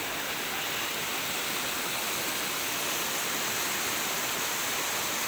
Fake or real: real